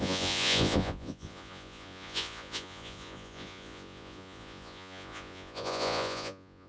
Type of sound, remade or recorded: remade